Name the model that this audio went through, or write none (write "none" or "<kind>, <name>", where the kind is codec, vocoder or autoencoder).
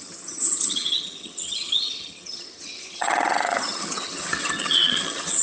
vocoder, HiFi-GAN